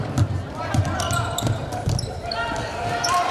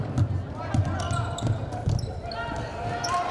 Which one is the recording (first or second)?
second